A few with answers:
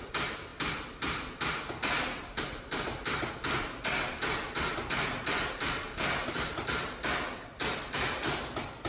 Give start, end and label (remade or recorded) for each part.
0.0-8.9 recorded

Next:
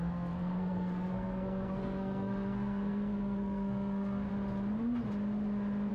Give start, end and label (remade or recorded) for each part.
0.0-4.3 remade; 4.3-5.9 recorded

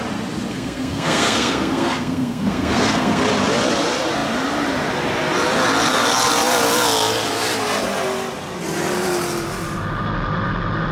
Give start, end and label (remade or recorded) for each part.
0.0-0.5 recorded; 0.5-3.2 remade; 3.2-10.9 recorded